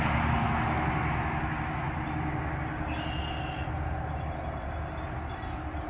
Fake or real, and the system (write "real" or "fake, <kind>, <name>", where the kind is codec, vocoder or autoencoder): real